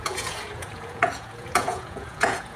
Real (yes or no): no